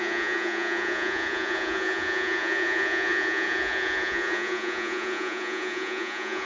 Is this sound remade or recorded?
remade